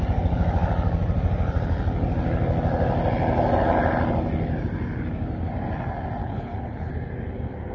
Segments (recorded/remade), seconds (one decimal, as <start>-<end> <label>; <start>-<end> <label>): 0.0-6.2 recorded; 6.2-6.9 remade; 6.9-7.7 recorded